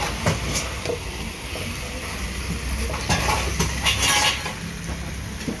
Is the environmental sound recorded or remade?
recorded